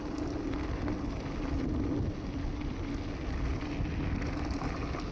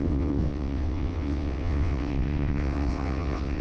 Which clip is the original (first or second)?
first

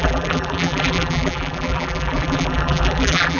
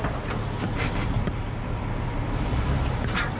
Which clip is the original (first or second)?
second